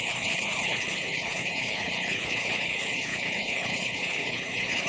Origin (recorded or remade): remade